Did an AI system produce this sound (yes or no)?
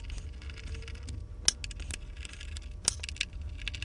no